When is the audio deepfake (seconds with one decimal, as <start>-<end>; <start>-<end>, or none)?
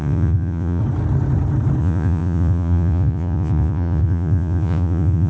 0.0-0.8; 1.8-5.3